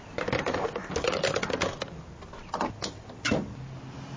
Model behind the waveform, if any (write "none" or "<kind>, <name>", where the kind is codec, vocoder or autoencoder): none